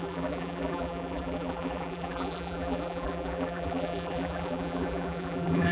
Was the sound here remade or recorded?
remade